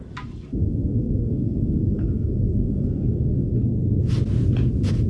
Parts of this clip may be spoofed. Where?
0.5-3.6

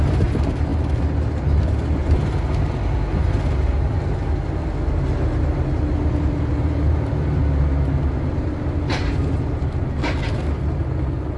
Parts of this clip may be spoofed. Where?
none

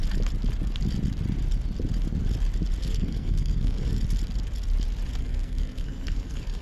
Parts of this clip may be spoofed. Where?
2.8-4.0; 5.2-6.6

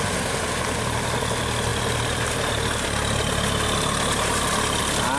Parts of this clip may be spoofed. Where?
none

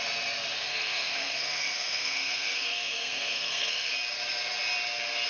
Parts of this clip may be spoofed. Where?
0.7-3.9

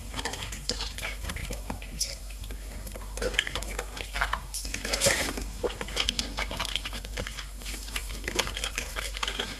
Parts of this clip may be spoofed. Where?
0.0-9.6

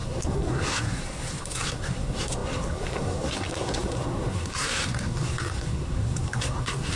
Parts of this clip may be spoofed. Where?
0.0-7.0